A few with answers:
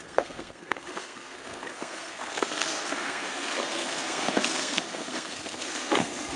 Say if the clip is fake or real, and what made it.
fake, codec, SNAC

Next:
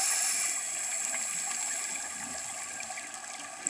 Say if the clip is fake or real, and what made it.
real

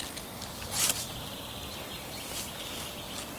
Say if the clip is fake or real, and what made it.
real